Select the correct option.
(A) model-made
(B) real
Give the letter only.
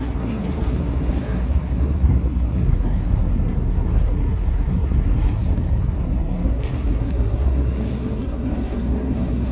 A